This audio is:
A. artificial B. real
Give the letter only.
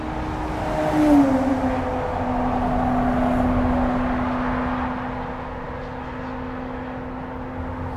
B